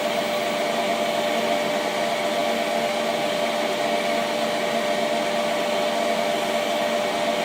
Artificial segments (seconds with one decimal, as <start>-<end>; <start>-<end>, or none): none